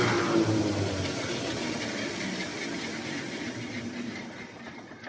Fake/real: fake